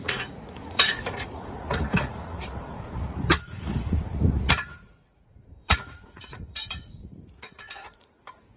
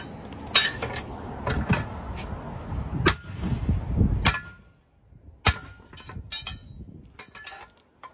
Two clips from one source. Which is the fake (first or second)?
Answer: first